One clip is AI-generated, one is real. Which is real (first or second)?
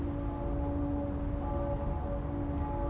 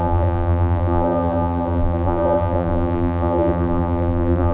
first